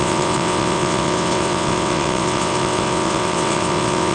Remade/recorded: remade